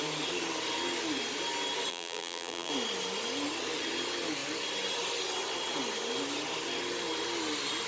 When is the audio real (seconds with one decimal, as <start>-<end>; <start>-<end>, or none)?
0.0-1.9; 2.7-7.9